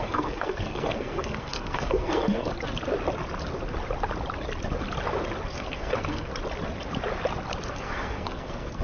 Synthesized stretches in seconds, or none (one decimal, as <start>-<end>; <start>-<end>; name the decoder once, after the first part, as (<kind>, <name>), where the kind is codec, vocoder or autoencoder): 0.0-2.5 (codec, SNAC); 5.5-6.3; 7.7-8.8

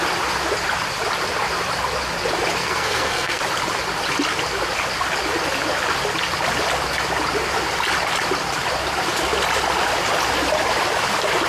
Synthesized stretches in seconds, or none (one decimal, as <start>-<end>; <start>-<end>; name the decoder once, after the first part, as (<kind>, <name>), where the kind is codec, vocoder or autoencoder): 2.6-3.4 (codec, SNAC)

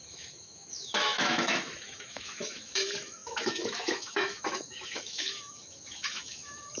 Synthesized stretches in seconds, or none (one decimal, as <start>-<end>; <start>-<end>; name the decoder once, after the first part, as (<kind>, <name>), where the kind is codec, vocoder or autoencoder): 0.0-6.8 (autoencoder, DAC-VAE)

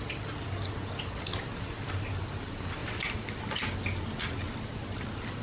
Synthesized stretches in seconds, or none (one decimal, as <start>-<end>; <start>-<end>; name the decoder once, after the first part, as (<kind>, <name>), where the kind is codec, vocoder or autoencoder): none